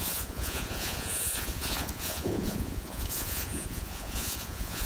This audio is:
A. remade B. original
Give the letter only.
A